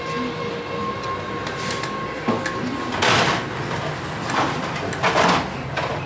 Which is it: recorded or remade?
recorded